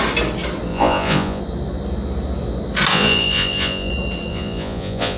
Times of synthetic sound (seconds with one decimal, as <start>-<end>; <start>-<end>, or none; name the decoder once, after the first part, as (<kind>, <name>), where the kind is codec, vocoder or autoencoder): 0.7-1.4 (vocoder, Vocos); 2.9-3.9; 4.3-5.2